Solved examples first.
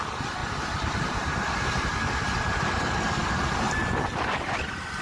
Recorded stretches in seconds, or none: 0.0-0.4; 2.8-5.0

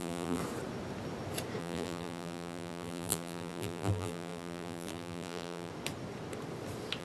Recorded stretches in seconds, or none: 0.4-1.6; 5.7-7.0

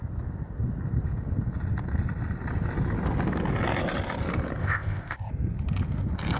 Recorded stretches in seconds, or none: 0.0-4.6; 5.3-6.4

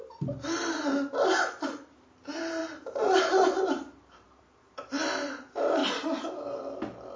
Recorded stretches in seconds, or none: 0.0-2.6; 4.4-7.2

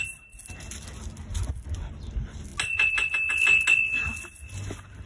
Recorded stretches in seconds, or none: 0.0-5.1

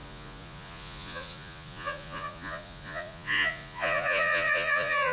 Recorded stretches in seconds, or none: none

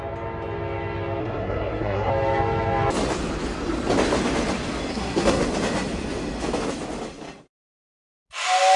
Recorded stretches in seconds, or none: 0.0-1.2; 2.1-4.9; 5.4-8.8